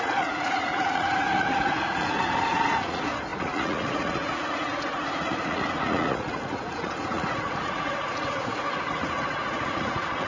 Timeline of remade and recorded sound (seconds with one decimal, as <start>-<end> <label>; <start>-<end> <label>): 0.0-10.3 remade